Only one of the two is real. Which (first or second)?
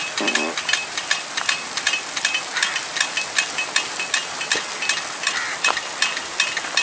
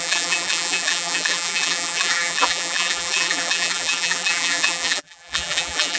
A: first